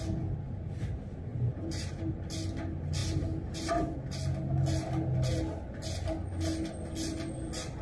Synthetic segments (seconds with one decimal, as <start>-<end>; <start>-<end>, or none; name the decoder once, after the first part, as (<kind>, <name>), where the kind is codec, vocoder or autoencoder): 1.3-2.1 (vocoder, BigVGAN v2); 3.0-4.1